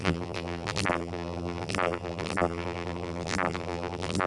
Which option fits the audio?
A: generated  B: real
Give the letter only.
A